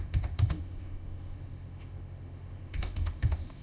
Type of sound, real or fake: fake